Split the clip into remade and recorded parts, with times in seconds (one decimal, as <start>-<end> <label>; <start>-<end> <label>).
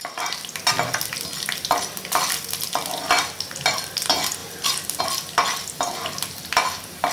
0.0-7.1 recorded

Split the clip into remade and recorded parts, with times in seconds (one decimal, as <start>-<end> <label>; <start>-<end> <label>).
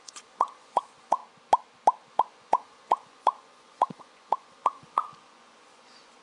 0.0-1.2 remade; 1.2-2.1 recorded; 2.1-6.2 remade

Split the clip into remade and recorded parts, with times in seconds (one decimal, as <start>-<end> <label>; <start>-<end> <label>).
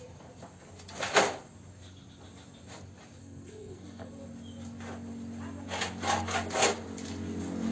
0.0-3.2 recorded; 3.2-4.1 remade; 4.1-7.7 recorded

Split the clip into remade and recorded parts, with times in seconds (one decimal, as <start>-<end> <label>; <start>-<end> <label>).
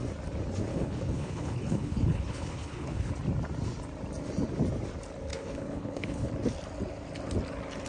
0.0-0.7 recorded; 0.7-3.1 remade; 3.1-5.3 recorded; 5.3-6.3 remade; 6.3-7.9 recorded